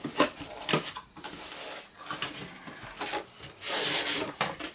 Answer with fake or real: real